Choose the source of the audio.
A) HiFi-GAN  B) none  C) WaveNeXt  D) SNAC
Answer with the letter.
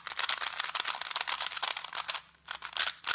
B